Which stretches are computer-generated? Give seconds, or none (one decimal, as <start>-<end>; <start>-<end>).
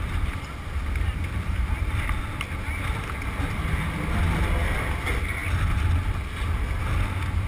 none